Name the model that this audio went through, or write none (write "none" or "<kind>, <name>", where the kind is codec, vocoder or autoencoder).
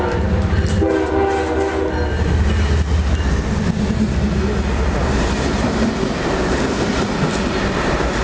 none